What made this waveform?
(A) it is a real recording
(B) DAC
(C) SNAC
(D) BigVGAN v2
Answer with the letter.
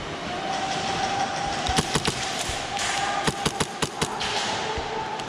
A